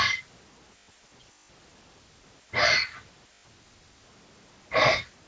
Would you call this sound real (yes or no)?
yes